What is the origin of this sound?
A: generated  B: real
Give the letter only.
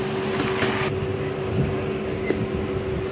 B